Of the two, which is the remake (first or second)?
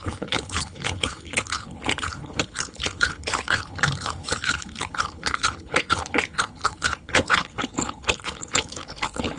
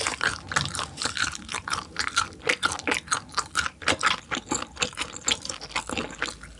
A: first